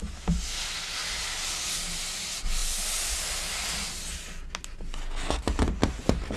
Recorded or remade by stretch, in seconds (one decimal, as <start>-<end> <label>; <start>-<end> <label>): 0.0-6.4 recorded